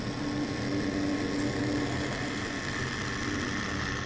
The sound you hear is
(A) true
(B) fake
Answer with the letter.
A